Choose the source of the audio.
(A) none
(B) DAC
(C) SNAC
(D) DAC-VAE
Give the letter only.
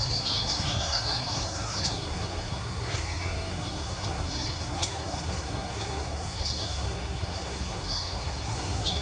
C